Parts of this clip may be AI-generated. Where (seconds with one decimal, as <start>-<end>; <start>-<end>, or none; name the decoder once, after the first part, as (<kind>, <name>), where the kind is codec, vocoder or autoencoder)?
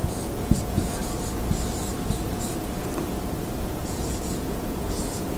0.0-1.0 (vocoder, Vocos); 3.6-5.4